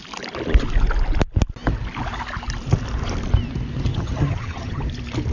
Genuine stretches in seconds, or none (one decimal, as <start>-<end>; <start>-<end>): 0.0-3.9; 4.8-5.3